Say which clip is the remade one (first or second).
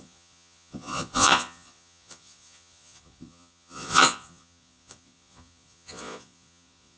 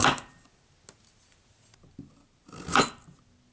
first